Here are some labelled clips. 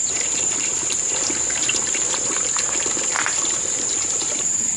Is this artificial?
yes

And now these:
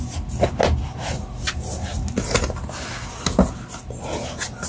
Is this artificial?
no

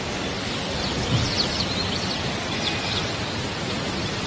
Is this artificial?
no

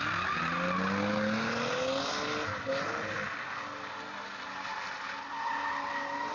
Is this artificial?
no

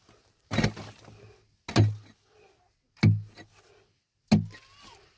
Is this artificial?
no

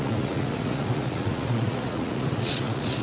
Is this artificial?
yes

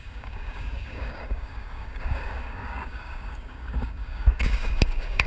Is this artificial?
yes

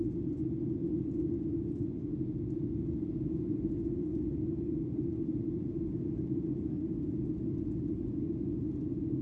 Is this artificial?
no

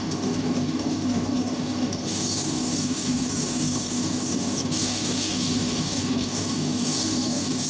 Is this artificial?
yes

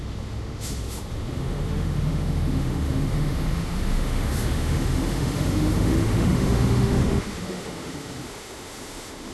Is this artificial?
yes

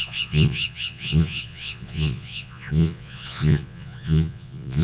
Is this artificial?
yes